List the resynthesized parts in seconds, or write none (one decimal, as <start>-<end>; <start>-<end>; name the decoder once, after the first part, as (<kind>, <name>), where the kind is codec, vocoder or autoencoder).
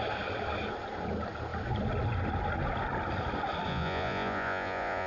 3.7-5.1 (vocoder, Vocos)